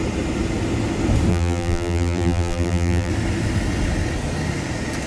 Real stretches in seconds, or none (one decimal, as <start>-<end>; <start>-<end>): 0.0-1.3; 3.1-5.1